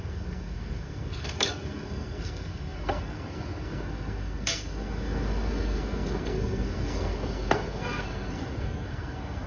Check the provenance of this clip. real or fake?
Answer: fake